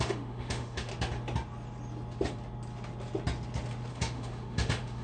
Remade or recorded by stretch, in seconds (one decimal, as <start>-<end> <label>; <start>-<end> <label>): 0.0-0.9 remade; 0.9-3.9 recorded; 3.9-5.0 remade